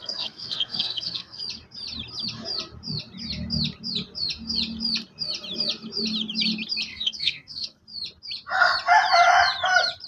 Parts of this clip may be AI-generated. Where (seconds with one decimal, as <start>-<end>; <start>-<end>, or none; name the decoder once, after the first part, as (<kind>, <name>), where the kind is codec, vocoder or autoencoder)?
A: 0.0-1.4 (codec, SNAC); 6.9-7.8